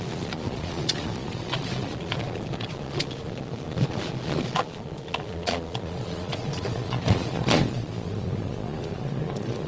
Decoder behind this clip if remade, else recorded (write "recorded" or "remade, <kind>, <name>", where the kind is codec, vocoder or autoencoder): remade, vocoder, Vocos